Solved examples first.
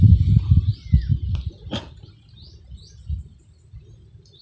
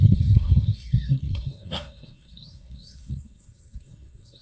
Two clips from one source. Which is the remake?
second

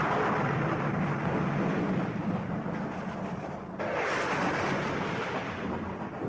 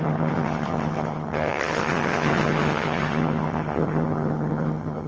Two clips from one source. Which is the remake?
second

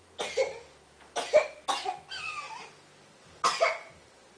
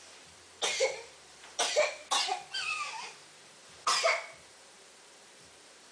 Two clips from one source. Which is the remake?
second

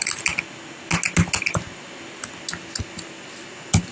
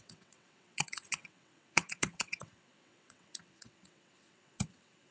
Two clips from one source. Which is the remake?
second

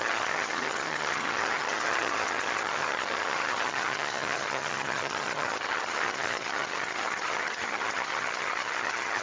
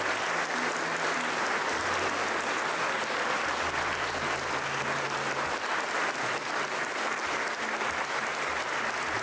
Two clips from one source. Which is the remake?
first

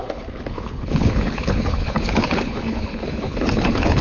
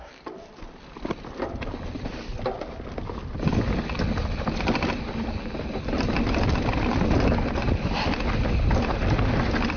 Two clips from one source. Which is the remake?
first